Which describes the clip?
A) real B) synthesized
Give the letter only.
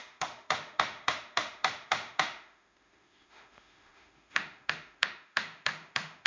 B